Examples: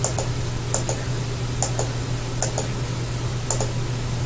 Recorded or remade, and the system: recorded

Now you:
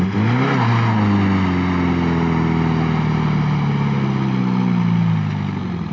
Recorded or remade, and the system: recorded